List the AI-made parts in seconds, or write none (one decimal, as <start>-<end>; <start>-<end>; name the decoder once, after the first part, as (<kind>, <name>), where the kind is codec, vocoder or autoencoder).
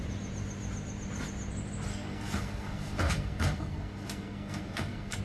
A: 1.9-5.2 (codec, SNAC)